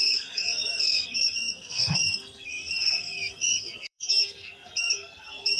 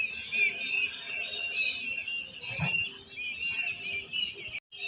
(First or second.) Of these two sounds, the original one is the second